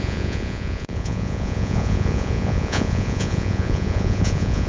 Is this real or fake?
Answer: fake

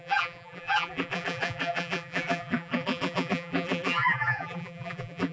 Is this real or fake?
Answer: fake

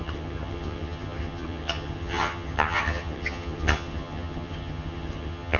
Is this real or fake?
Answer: fake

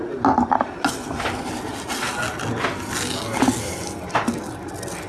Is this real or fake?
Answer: real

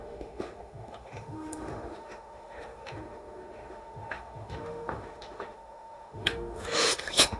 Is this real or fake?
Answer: fake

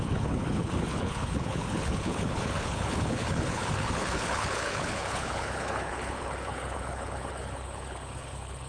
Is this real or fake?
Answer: fake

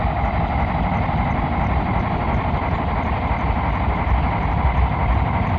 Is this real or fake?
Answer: real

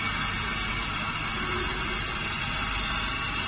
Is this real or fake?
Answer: real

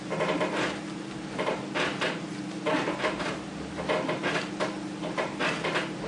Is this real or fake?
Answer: real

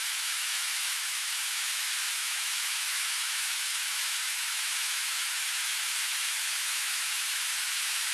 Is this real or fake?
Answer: fake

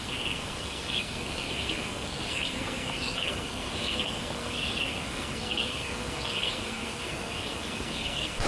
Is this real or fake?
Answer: fake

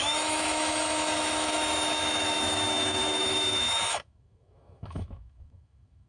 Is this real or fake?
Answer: fake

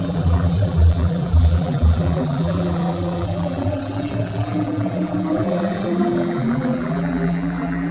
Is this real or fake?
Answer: fake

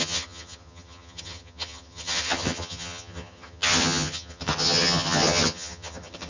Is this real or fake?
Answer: fake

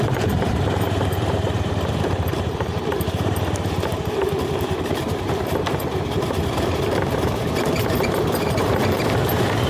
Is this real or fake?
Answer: fake